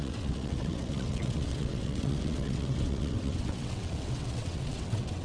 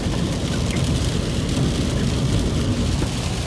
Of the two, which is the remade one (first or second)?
first